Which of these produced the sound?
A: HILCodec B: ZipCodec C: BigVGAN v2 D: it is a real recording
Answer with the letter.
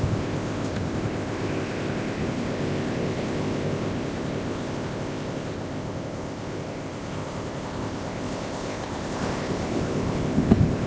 B